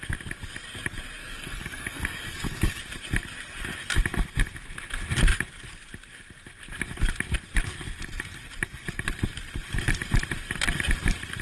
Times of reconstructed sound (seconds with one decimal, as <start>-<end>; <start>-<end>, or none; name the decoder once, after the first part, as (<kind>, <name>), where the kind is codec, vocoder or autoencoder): 1.2-2.8 (codec, DAC)